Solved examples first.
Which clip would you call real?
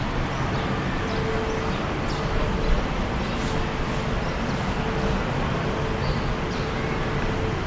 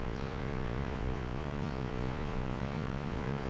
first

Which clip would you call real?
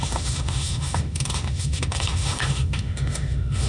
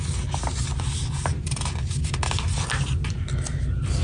second